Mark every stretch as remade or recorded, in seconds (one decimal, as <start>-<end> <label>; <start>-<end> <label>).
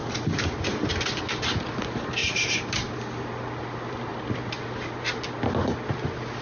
0.0-1.2 remade; 1.2-2.2 recorded; 2.2-3.0 remade; 3.0-6.4 recorded